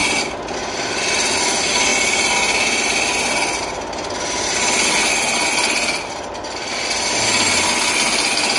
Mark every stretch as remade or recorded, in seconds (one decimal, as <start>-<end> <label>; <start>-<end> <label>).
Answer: 0.0-1.9 recorded; 1.9-3.6 remade; 3.6-8.6 recorded